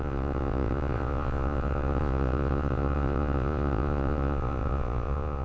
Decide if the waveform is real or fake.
fake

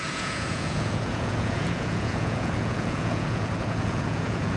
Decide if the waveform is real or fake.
fake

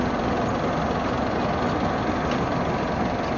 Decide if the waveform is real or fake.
real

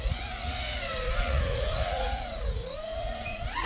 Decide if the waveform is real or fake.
fake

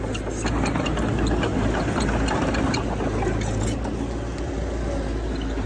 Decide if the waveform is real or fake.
real